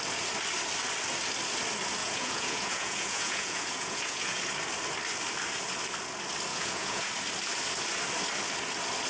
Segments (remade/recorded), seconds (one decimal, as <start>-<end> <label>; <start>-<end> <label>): 0.0-2.0 recorded; 2.0-4.4 remade; 4.4-6.5 recorded; 6.5-7.1 remade; 7.1-9.1 recorded